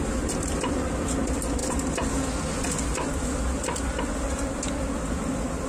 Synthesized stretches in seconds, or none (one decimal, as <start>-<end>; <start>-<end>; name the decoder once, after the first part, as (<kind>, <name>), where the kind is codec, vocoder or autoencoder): none